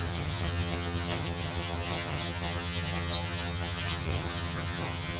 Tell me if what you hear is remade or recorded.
remade